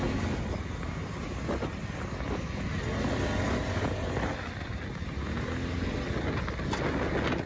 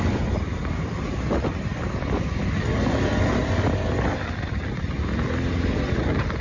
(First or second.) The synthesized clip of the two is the second